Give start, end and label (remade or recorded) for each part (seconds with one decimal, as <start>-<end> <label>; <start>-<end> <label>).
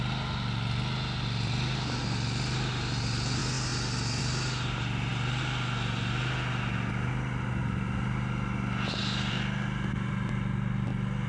0.0-11.3 recorded